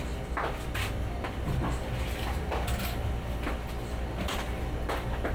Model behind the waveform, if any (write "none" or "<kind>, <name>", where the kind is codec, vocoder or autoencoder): none